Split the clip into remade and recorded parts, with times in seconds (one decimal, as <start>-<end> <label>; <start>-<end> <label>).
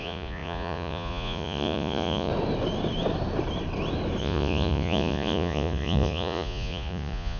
0.0-2.3 remade; 2.3-4.2 recorded; 4.2-7.4 remade